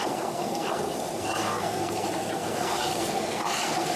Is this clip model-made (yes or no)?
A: yes